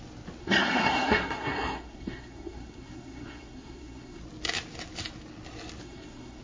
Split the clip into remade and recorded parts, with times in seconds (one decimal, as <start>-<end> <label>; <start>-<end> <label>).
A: 0.0-0.4 recorded; 0.4-4.2 remade; 4.2-5.8 recorded; 5.8-6.4 remade